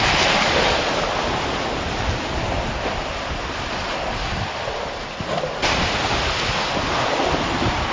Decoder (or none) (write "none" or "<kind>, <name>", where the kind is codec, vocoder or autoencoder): none